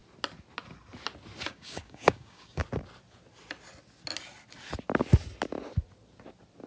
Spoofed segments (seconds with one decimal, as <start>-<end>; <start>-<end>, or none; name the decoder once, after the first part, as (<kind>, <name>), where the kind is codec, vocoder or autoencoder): 1.5-2.6 (codec, DAC)